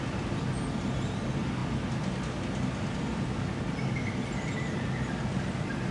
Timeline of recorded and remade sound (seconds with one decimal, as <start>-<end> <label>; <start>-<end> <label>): 0.0-5.9 recorded